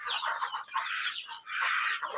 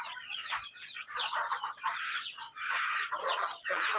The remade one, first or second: second